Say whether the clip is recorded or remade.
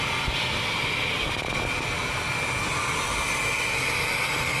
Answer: recorded